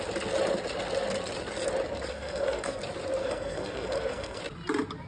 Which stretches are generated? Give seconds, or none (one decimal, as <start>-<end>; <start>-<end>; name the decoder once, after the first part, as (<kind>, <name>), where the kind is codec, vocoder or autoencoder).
2.1-2.8 (codec, SNAC); 3.2-4.4